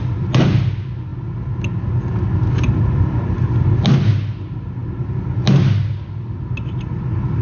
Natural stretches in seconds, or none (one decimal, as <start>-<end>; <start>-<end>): 0.0-7.4